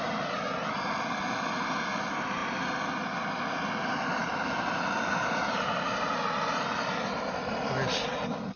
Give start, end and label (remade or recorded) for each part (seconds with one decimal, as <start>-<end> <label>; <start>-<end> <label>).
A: 0.0-8.6 recorded